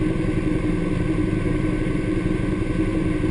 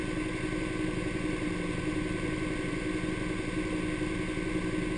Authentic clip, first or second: second